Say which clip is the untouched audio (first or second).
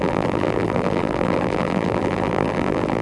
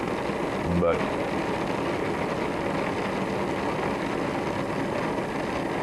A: second